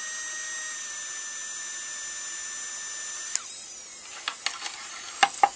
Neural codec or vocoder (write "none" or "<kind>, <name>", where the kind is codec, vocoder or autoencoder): none